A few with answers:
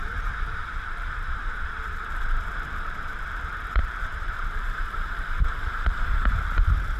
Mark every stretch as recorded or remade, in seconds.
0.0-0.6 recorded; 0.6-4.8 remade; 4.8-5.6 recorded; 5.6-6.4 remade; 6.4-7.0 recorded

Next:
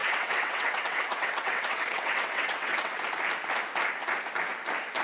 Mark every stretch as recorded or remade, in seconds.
0.0-3.0 remade; 3.0-5.0 recorded

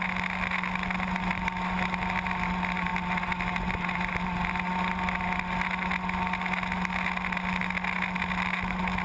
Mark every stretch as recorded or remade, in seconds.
0.0-9.0 recorded

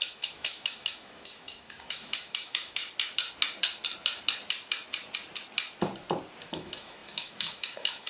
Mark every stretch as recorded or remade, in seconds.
0.0-2.8 remade; 2.8-6.5 recorded; 6.5-8.1 remade

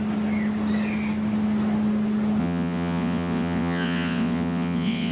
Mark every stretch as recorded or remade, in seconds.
0.0-2.4 recorded; 2.4-5.1 remade

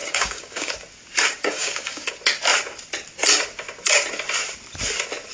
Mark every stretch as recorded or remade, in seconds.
0.0-0.7 remade; 0.7-1.4 recorded; 1.4-2.1 remade; 2.1-5.3 recorded

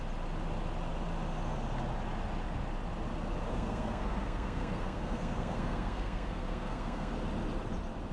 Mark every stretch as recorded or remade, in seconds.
0.0-3.5 recorded; 3.5-7.1 remade; 7.1-8.1 recorded